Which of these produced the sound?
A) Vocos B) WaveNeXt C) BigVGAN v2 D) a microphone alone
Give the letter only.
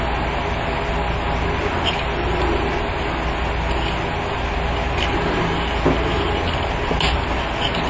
D